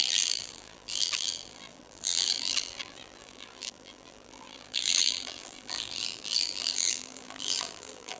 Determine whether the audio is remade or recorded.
remade